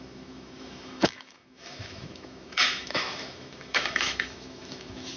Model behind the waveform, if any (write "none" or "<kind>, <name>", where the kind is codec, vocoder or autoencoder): autoencoder, DAC-VAE